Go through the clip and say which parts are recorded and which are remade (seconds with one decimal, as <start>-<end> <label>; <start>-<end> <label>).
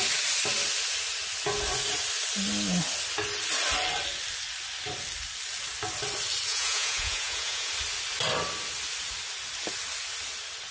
0.0-6.5 recorded; 6.5-7.7 remade; 7.7-10.7 recorded